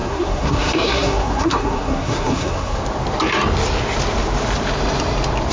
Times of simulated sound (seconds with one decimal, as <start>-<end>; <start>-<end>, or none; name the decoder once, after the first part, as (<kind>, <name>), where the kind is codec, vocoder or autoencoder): 0.0-2.8 (codec, SNAC)

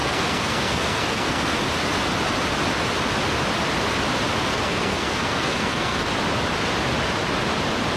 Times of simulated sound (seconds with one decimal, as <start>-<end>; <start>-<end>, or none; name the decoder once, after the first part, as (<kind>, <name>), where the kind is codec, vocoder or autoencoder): 0.0-1.6 (codec, SNAC); 4.5-6.1

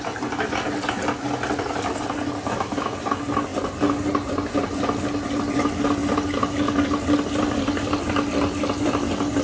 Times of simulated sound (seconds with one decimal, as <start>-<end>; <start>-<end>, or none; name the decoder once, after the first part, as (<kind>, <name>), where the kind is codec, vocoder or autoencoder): none

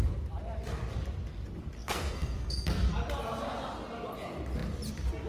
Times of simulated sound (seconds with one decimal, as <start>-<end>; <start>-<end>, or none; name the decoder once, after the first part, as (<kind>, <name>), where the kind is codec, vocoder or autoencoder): 1.8-2.9 (codec, SNAC)

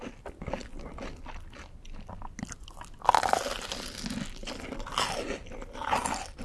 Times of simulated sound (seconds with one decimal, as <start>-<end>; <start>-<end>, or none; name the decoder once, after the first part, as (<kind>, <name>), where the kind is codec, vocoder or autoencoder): none

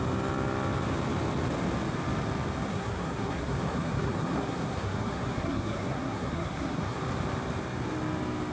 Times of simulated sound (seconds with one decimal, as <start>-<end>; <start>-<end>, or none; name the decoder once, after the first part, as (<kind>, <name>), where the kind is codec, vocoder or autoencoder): 2.7-7.0 (codec, SNAC)